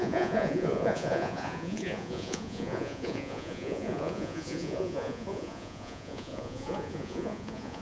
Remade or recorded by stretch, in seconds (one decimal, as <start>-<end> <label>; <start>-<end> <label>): 0.0-7.8 remade